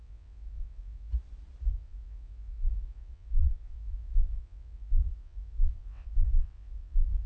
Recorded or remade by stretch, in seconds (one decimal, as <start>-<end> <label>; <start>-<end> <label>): 0.0-1.1 remade; 1.1-1.7 recorded; 1.7-7.3 remade